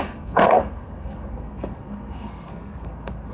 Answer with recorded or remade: remade